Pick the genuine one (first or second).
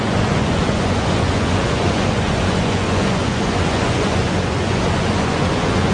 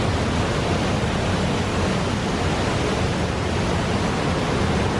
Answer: second